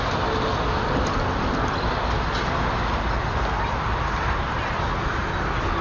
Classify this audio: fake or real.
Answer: real